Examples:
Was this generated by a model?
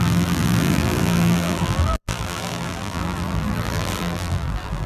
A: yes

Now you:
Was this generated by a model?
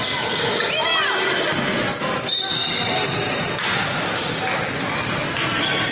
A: no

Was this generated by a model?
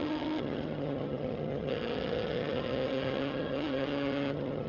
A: yes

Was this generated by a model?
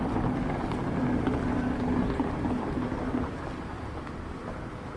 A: no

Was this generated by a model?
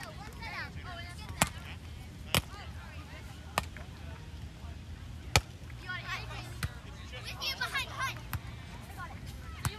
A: no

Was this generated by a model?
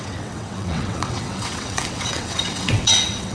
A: yes